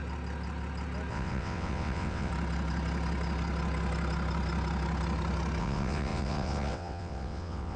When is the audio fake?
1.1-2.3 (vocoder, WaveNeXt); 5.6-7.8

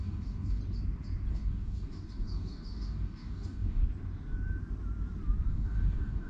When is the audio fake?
0.0-0.6 (codec, DAC); 1.3-3.8; 5.5-6.3

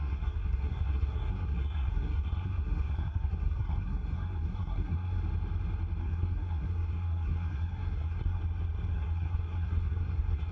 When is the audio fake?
0.0-5.2 (codec, SNAC); 6.0-8.4; 8.9-10.5

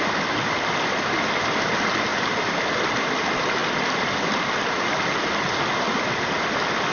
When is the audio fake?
none

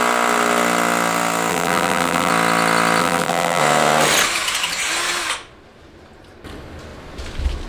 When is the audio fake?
1.5-2.3 (vocoder, BigVGAN v2); 3.0-3.6

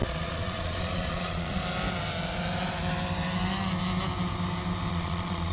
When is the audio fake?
0.0-1.6 (vocoder, Vocos); 4.9-5.5

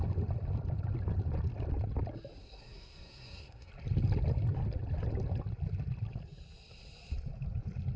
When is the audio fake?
2.4-3.7 (codec, SNAC)